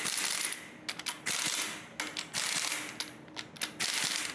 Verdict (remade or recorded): recorded